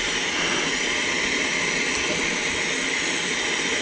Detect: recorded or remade recorded